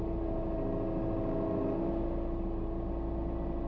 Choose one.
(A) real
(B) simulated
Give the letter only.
A